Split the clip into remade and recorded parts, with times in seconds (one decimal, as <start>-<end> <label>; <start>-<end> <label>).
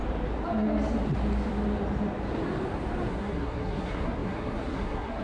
0.0-3.1 recorded; 3.1-5.2 remade